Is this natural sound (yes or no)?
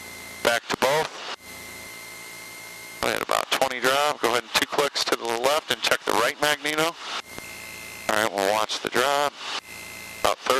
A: yes